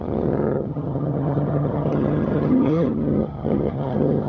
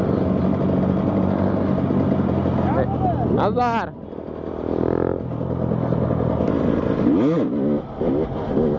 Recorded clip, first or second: second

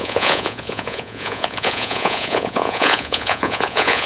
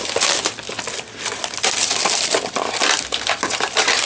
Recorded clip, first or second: second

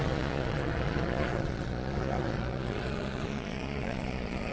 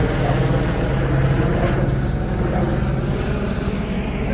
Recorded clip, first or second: second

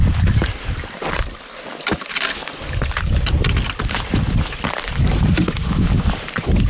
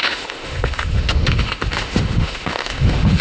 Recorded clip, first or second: first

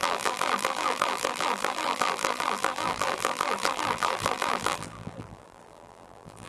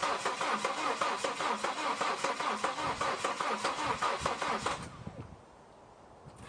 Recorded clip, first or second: second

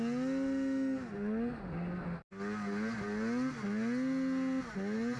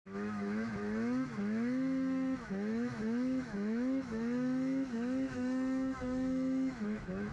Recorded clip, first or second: first